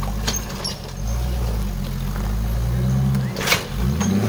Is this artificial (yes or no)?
no